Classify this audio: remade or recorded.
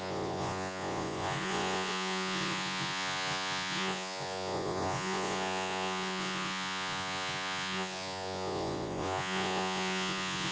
remade